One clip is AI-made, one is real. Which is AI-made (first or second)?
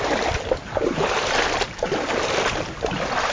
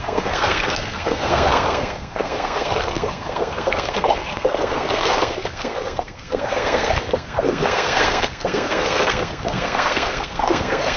second